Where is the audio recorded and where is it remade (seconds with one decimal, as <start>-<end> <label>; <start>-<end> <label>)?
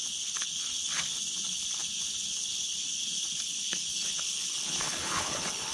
0.0-5.7 remade